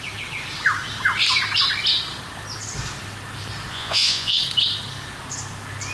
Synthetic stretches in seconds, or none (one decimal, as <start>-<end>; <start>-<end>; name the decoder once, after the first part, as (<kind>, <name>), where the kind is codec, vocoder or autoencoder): 3.7-4.4 (vocoder, Vocos)